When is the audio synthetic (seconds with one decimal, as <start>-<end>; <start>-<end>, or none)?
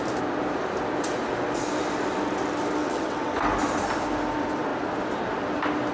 2.8-3.3